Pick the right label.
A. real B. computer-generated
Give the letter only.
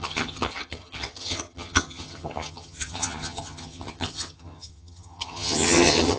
B